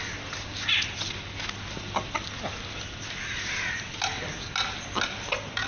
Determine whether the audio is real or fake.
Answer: real